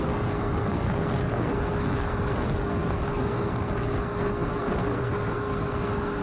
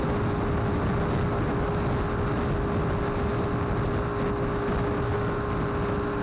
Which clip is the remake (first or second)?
first